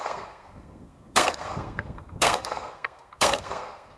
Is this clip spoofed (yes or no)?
yes